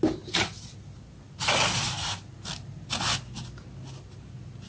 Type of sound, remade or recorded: recorded